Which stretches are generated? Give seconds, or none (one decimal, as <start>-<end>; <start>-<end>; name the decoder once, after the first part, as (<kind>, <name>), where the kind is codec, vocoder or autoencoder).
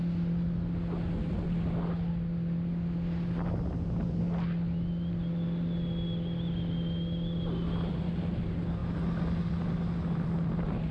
none